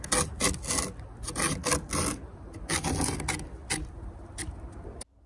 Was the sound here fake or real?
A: real